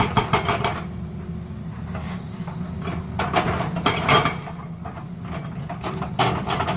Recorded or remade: recorded